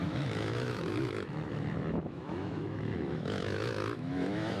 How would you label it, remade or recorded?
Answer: remade